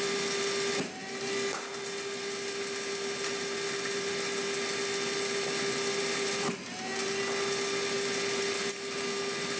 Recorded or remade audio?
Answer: recorded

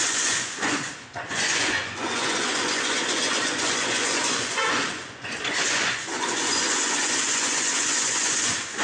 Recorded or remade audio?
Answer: remade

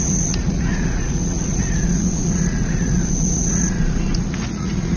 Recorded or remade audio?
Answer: remade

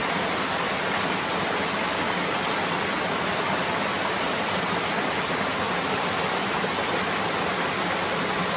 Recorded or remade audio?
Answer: recorded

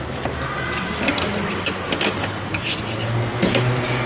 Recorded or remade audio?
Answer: recorded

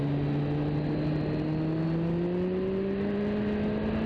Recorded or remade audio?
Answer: recorded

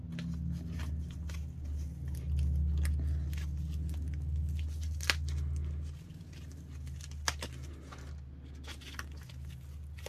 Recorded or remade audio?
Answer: recorded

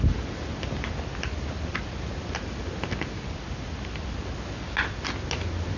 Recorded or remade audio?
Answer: recorded